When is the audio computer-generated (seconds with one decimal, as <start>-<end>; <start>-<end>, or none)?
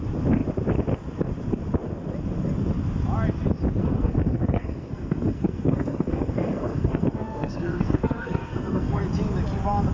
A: 3.8-9.0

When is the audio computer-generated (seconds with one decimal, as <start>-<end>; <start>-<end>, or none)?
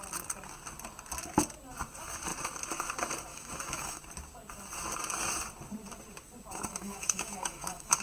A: 3.3-4.0; 6.7-8.0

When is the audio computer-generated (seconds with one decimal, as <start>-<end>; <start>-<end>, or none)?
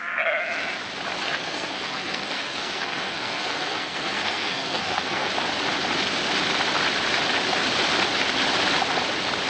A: 1.2-5.3